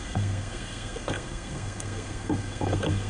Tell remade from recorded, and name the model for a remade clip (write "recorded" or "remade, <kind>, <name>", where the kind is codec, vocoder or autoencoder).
remade, codec, SNAC